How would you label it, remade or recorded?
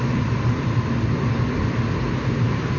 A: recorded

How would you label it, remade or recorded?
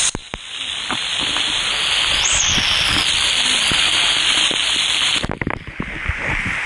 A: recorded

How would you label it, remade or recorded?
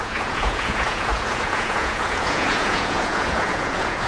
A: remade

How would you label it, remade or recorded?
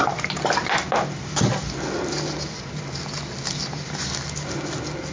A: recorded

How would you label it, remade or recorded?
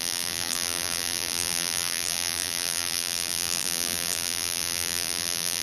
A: remade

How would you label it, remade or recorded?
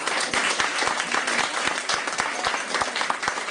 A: recorded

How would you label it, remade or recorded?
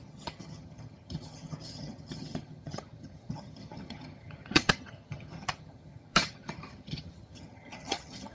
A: remade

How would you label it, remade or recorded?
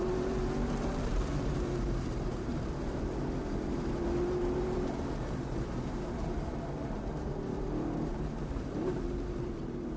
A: remade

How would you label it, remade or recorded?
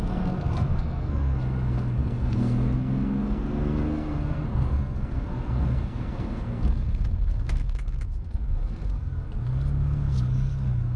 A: remade